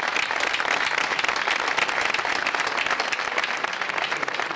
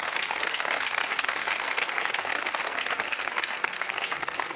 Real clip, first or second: first